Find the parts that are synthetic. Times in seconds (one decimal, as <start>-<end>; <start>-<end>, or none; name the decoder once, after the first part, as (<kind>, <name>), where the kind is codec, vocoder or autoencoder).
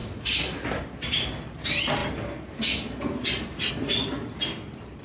none